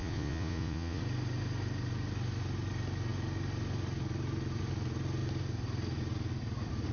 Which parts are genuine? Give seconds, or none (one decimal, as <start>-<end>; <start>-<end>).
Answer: 1.0-6.9